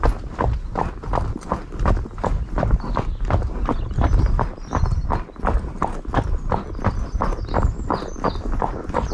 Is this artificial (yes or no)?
no